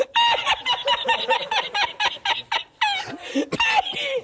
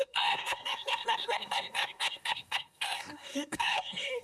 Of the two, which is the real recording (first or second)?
first